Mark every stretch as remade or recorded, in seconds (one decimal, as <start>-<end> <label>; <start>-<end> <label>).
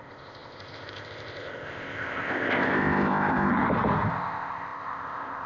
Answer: 0.0-3.5 remade; 3.5-4.1 recorded; 4.1-5.5 remade